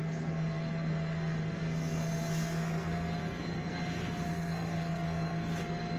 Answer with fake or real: fake